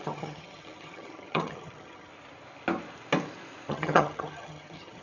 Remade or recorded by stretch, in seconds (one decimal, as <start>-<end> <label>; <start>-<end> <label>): 0.0-2.1 remade; 2.1-3.7 recorded; 3.7-5.0 remade